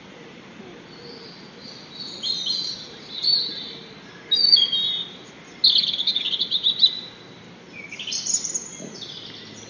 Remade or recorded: recorded